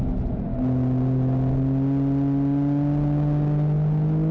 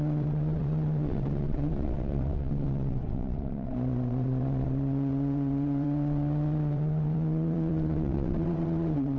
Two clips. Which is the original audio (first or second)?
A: first